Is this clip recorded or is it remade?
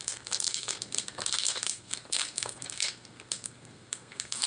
remade